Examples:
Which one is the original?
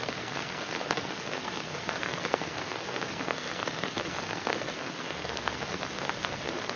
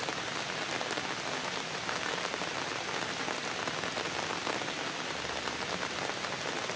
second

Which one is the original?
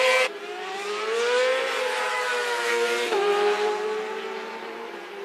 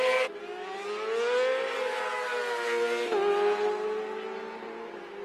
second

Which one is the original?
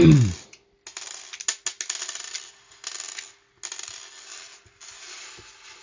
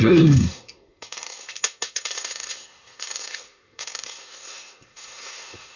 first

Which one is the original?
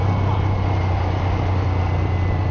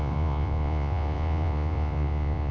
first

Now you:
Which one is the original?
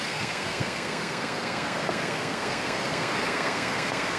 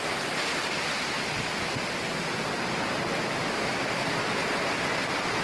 second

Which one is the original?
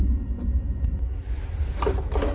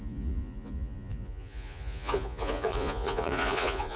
first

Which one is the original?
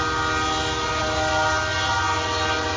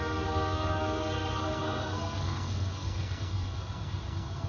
first